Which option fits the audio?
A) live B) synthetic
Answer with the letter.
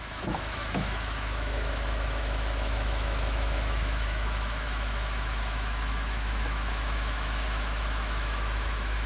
B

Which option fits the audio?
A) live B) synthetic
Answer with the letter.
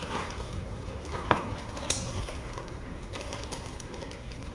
B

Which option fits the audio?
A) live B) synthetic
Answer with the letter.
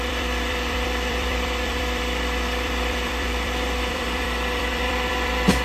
B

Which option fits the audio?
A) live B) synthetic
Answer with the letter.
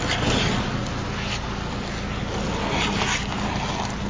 A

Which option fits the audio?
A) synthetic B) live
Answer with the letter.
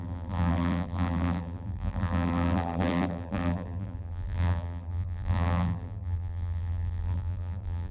A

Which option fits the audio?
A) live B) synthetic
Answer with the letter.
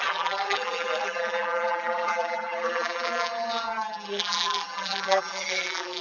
B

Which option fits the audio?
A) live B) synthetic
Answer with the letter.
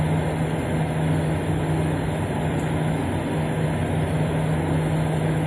A